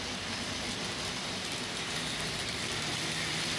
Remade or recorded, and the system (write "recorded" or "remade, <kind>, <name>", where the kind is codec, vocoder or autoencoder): recorded